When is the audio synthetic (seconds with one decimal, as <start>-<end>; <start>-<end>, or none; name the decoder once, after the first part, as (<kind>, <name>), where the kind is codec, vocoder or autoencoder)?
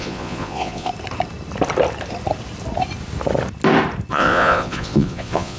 0.0-0.9 (vocoder, Vocos); 4.1-5.6